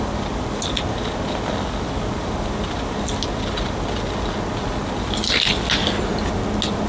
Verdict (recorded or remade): recorded